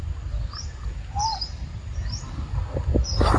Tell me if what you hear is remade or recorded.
recorded